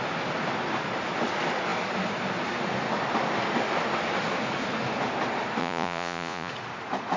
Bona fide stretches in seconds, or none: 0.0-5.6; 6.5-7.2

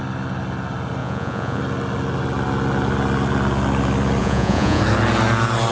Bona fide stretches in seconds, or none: 0.0-1.0; 1.6-4.2; 4.8-5.7

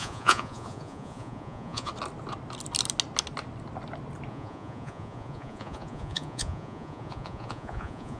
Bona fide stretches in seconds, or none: 1.9-4.3

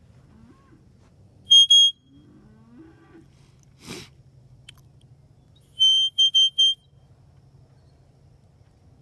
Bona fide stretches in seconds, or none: 0.0-9.0

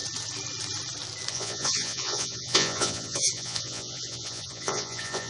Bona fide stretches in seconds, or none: 0.0-1.3

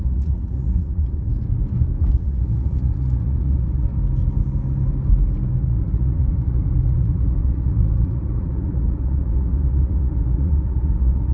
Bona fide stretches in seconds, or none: 1.3-2.1; 3.9-5.6

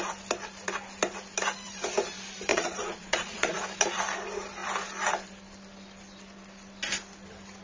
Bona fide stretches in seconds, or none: 0.0-2.5; 3.5-7.6

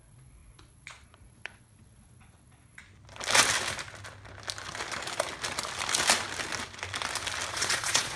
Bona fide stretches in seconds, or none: 2.8-7.5